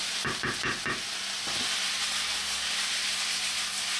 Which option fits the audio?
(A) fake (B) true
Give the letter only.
B